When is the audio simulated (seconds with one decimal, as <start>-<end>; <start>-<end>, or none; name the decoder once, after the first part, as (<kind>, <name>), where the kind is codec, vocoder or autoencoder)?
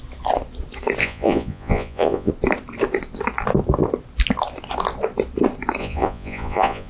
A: 1.0-2.3 (vocoder, Vocos); 5.8-6.9